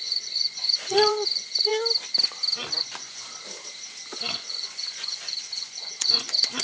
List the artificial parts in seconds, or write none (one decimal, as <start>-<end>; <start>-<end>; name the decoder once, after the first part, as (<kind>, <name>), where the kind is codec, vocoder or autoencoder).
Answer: 0.0-1.7 (vocoder, Vocos); 2.8-3.2; 4.3-6.6